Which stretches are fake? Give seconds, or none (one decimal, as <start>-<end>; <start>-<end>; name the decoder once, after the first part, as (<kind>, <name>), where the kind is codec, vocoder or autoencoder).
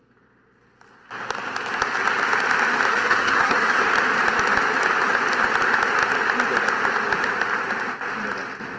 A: 2.9-3.8 (codec, SNAC)